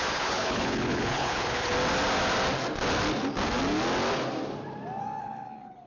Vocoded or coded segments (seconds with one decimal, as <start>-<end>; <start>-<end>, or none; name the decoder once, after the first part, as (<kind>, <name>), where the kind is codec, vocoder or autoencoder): 0.0-1.7 (codec, HILCodec); 5.2-5.9